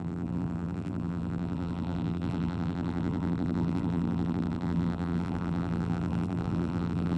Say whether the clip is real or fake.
fake